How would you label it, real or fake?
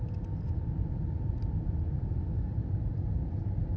real